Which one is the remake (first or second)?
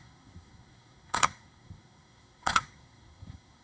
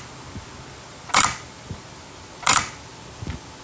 first